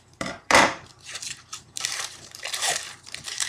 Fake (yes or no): yes